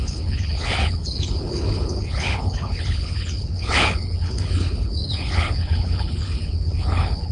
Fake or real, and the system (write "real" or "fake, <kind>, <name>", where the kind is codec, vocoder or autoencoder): fake, codec, HILCodec